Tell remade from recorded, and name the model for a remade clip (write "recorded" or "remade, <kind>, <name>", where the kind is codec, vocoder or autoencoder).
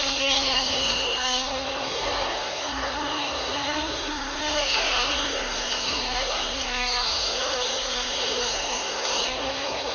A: remade, codec, SNAC